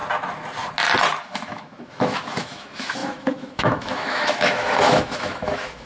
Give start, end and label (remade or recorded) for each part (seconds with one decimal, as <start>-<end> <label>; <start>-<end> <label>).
0.0-1.2 recorded; 1.2-5.9 remade